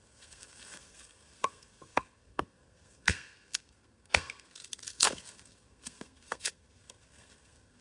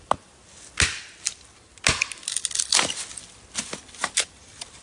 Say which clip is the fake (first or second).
first